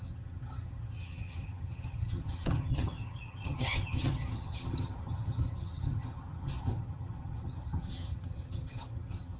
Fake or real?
fake